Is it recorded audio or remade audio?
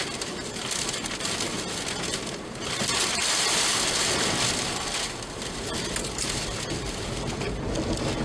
recorded